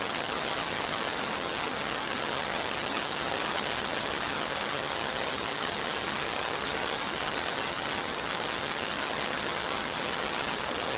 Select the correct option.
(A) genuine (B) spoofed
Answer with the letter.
B